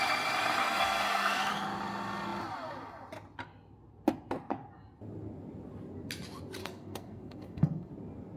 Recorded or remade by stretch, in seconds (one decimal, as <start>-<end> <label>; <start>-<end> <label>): 0.0-0.6 recorded; 0.6-1.5 remade; 1.5-6.6 recorded; 6.6-7.9 remade; 7.9-8.4 recorded